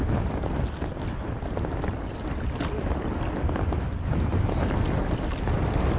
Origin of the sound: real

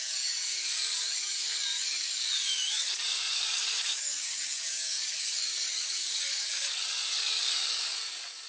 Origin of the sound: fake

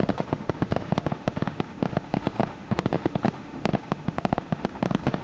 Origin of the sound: fake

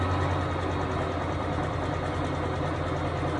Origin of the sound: real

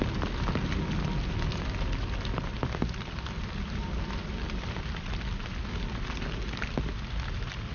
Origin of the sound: real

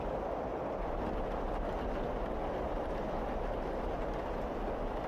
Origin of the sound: real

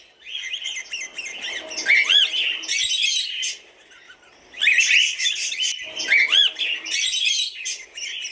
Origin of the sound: real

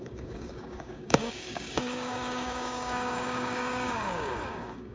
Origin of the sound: fake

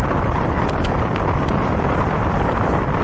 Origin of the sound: real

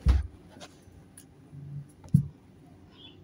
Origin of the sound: real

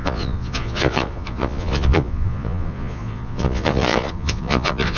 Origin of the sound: fake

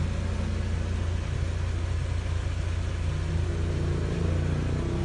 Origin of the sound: real